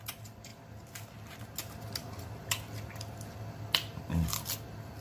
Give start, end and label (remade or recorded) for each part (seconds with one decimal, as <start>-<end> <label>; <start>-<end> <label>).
0.0-0.5 remade; 0.5-3.5 recorded; 3.5-3.9 remade; 3.9-5.0 recorded